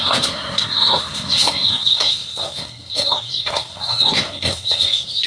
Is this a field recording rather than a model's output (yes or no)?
no